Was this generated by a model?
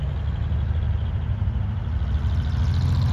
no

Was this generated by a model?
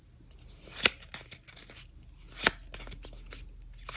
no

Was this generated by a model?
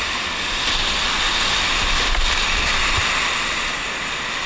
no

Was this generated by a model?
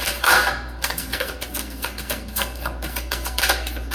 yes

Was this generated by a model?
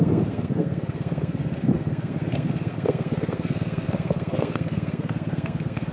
yes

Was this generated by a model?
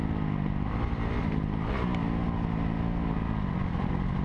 no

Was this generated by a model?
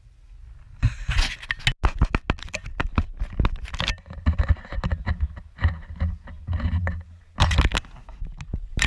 no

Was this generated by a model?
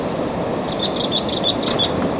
no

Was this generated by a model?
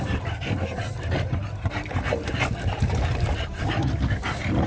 yes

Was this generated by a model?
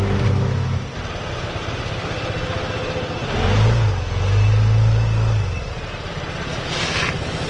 no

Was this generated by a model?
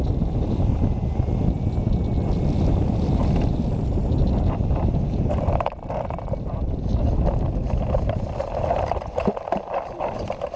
no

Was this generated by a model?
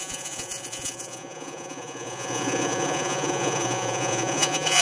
yes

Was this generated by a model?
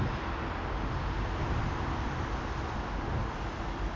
no